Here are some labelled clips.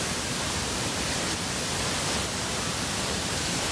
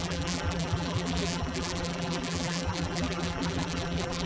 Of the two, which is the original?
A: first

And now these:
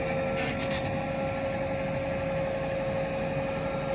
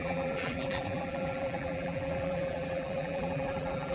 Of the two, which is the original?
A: first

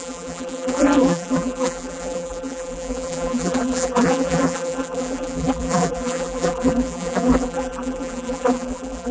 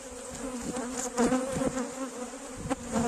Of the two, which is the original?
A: second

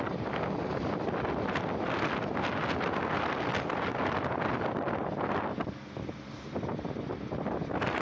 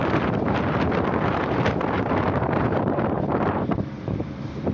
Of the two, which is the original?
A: first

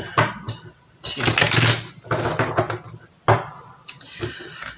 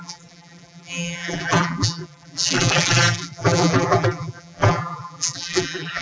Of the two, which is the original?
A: first